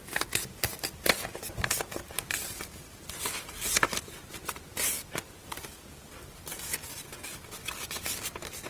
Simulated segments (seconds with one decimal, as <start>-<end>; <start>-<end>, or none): none